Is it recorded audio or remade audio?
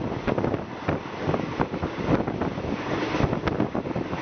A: recorded